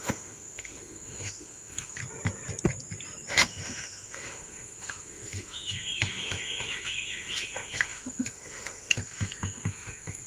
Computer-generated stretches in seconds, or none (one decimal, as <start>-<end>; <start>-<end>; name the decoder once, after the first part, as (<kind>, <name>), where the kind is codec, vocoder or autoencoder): 0.0-2.0 (autoencoder, DAC-VAE); 3.3-10.3